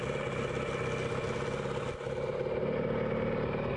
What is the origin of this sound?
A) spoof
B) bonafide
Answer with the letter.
B